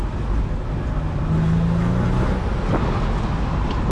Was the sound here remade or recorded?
recorded